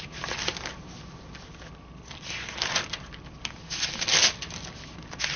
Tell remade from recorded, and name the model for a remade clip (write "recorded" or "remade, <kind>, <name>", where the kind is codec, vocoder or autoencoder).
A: recorded